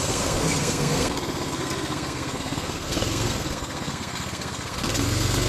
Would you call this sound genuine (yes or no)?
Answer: no